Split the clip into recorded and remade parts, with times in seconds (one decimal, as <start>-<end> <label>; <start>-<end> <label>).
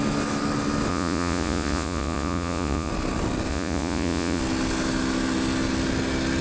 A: 0.0-0.9 recorded; 0.9-2.9 remade; 2.9-3.5 recorded; 3.5-4.4 remade; 4.4-6.4 recorded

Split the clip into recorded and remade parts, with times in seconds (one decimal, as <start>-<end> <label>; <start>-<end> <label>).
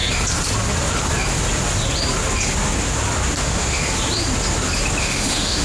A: 0.0-3.4 recorded; 3.4-3.8 remade; 3.8-5.0 recorded; 5.0-5.6 remade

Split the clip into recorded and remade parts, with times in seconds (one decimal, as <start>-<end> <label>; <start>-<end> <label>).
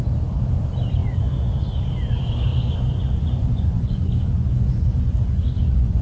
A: 0.0-2.5 recorded; 2.5-6.0 remade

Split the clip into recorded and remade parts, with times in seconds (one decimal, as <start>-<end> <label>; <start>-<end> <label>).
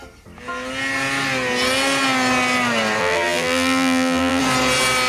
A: 0.0-3.0 recorded; 3.0-4.4 remade; 4.4-5.1 recorded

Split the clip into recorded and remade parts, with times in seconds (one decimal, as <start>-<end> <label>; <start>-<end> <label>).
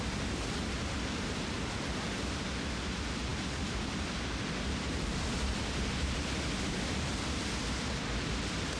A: 0.0-8.8 recorded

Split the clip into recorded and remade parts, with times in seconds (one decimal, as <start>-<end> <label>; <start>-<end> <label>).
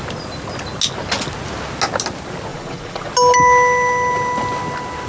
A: 0.0-2.5 recorded; 2.5-3.1 remade; 3.1-5.1 recorded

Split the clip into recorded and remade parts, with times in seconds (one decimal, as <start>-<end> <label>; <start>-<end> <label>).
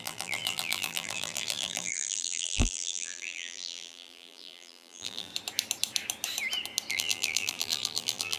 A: 0.0-5.3 remade; 5.3-6.9 recorded; 6.9-8.4 remade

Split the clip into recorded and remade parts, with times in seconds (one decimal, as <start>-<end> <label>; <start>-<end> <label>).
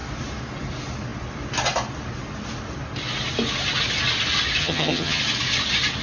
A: 0.0-4.6 recorded; 4.6-5.2 remade; 5.2-6.0 recorded